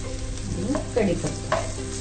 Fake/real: real